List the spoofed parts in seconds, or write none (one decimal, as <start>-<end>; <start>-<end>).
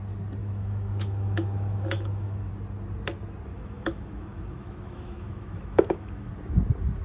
0.4-2.5; 3.5-6.3